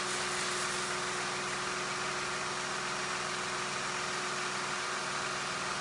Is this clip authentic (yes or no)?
yes